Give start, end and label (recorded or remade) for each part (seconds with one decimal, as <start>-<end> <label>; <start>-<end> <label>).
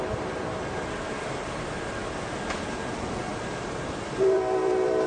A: 0.0-2.0 remade; 2.0-2.7 recorded; 2.7-5.1 remade